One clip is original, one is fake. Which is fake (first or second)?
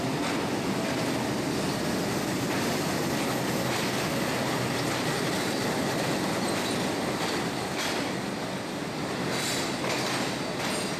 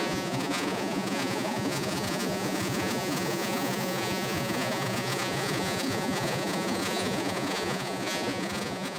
second